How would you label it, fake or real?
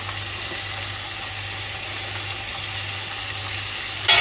real